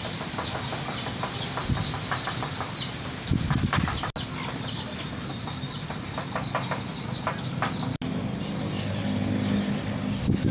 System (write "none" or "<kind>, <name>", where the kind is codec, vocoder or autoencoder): none